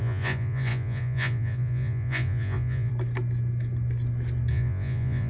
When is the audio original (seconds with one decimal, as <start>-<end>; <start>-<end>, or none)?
2.9-4.5